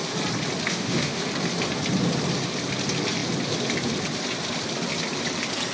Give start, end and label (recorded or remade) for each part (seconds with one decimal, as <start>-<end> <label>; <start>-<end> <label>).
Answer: 0.0-0.7 recorded; 0.7-1.2 remade; 1.2-5.7 recorded